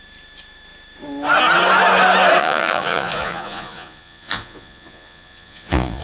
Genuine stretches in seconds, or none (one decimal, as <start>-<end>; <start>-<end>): 0.0-2.4